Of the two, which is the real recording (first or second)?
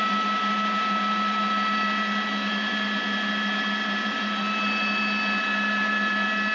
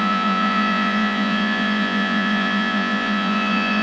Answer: first